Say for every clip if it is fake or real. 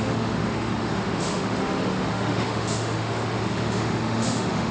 fake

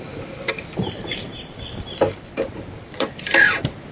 real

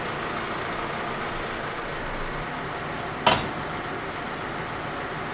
real